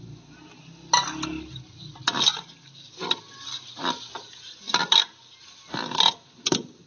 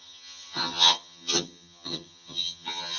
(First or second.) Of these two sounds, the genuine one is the first